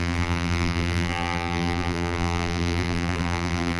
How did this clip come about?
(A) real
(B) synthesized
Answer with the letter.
B